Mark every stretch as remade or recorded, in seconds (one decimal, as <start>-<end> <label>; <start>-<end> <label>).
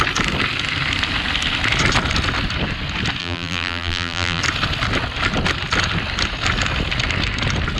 0.0-3.2 recorded; 3.2-4.4 remade; 4.4-7.8 recorded